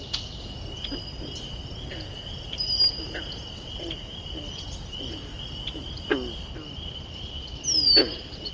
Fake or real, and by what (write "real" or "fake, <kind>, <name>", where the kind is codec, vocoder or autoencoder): real